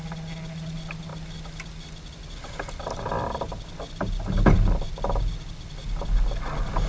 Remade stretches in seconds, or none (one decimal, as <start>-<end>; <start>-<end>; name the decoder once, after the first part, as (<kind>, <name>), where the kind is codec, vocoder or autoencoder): none